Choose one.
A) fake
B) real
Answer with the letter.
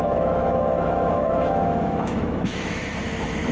A